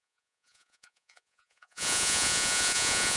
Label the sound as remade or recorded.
remade